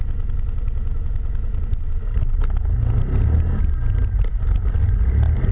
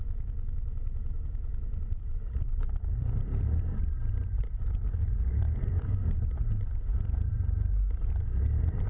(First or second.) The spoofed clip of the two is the second